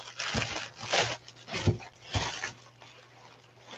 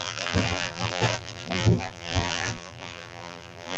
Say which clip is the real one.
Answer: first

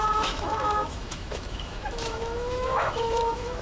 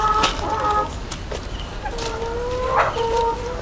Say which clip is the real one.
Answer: second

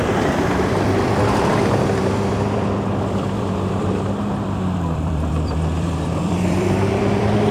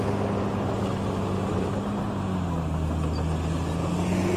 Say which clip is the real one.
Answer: second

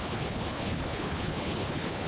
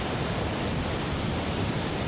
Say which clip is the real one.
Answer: second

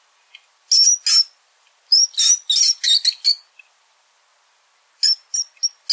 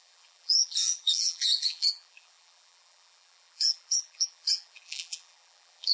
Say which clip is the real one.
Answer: first